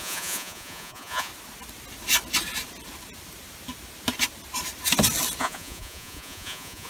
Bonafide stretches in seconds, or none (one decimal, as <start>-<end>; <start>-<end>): 1.3-5.4